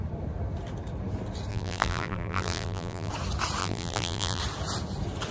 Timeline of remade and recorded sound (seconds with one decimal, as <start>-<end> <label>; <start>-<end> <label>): 0.0-1.5 recorded; 1.5-3.1 remade; 3.1-3.6 recorded; 3.6-4.4 remade; 4.4-5.3 recorded